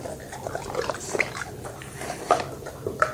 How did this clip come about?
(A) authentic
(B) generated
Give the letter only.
A